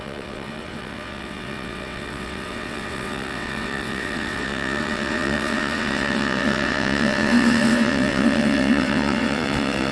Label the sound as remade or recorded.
remade